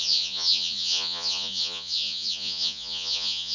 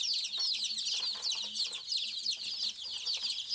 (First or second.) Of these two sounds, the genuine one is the second